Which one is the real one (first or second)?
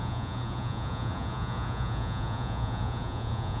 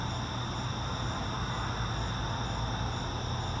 second